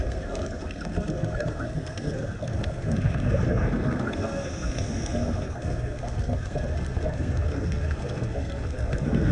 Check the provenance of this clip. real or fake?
fake